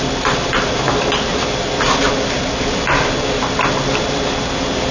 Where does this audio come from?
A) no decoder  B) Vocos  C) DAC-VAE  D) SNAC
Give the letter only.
A